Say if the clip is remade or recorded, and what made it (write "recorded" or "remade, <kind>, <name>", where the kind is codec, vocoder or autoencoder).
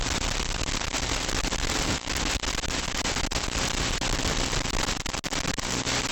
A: recorded